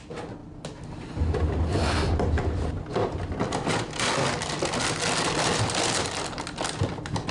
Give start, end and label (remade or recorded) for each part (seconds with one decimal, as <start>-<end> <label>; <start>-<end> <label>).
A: 0.0-7.3 recorded